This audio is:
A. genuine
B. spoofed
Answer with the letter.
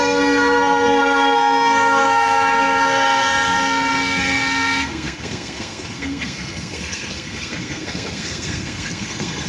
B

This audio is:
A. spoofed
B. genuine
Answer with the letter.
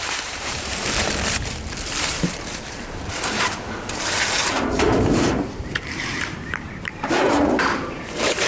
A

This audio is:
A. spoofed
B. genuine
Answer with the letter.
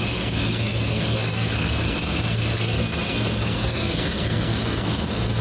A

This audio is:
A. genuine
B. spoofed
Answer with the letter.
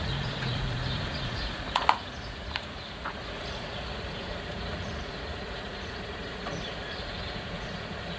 B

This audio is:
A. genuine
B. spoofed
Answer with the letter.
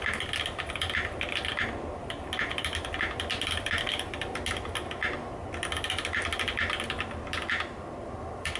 A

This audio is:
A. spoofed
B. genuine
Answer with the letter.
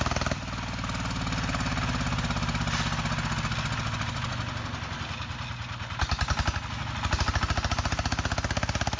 B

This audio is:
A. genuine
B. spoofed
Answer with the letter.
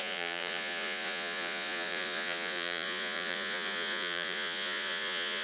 B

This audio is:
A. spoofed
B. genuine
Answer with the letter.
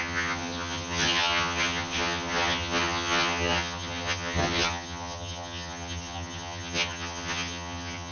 A